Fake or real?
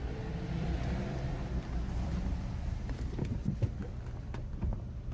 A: fake